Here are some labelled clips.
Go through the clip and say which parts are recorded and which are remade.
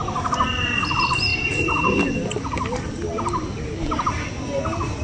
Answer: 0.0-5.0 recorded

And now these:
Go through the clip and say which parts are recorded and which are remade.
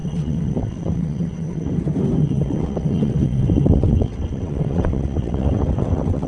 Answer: 0.0-1.7 remade; 1.7-2.2 recorded; 2.2-6.3 remade